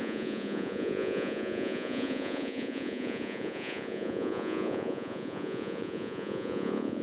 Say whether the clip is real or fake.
fake